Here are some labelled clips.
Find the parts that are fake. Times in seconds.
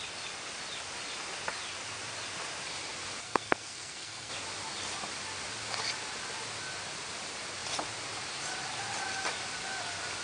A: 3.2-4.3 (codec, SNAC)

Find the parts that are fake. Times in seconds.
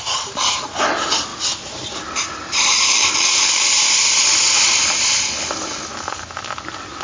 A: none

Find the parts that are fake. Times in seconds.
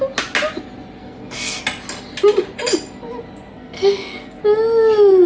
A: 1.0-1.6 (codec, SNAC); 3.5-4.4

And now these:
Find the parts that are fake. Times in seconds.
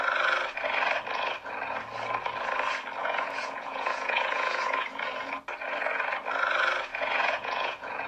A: 3.0-5.0 (vocoder, Vocos); 6.9-8.1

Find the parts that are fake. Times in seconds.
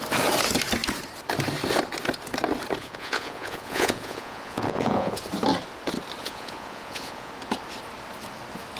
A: 2.8-5.2 (vocoder, Vocos); 6.2-7.3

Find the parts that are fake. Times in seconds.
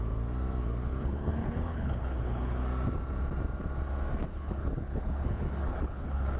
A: 0.6-2.6 (codec, HILCodec); 4.3-6.4